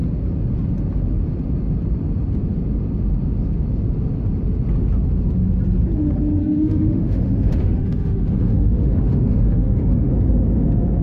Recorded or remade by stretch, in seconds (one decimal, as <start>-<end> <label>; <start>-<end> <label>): 0.0-6.4 recorded; 6.4-10.1 remade; 10.1-11.0 recorded